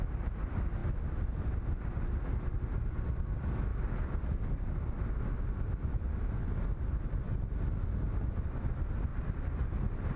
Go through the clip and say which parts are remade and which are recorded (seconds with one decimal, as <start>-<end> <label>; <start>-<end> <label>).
0.0-0.8 recorded; 0.8-1.5 remade; 1.5-9.1 recorded; 9.1-10.2 remade